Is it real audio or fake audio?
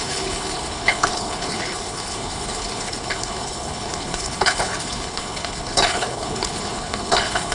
fake